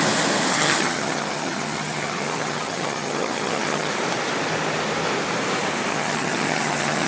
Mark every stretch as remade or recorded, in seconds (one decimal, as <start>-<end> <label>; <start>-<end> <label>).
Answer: 0.0-0.5 recorded; 0.5-3.9 remade; 3.9-5.9 recorded; 5.9-7.1 remade